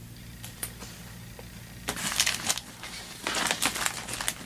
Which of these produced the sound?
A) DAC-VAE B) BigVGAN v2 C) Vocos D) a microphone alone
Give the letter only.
D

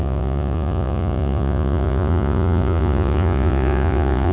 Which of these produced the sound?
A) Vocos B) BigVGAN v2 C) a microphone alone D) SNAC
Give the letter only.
A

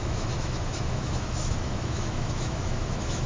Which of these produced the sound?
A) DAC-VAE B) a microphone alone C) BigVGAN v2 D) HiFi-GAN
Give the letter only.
A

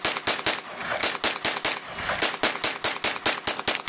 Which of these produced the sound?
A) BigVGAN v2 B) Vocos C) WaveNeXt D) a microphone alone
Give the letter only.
D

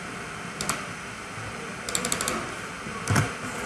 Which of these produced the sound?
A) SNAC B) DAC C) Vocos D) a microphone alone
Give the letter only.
D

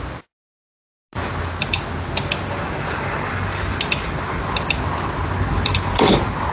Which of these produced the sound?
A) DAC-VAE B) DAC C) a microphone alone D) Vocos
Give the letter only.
C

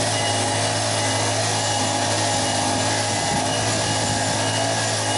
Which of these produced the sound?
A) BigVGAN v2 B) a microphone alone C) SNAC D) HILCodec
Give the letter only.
B